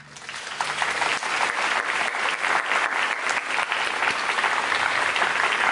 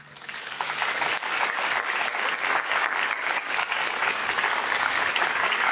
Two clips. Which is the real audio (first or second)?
first